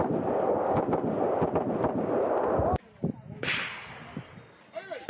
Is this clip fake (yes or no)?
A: no